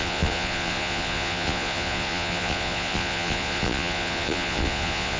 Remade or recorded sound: remade